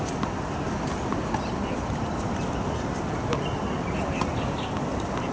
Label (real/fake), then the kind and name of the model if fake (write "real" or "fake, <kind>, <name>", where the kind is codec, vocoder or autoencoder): real